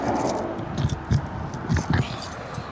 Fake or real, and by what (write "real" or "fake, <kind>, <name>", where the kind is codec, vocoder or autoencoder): real